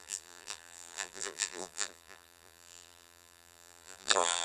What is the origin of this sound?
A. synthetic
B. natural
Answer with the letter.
A